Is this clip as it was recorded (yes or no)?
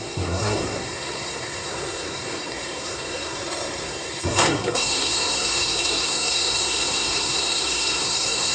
no